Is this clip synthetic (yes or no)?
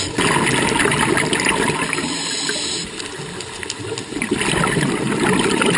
no